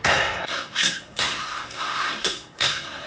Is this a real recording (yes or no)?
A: no